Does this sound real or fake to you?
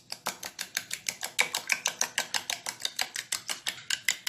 real